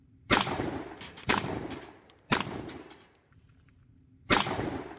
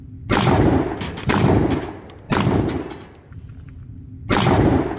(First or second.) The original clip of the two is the second